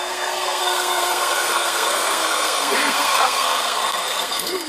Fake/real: fake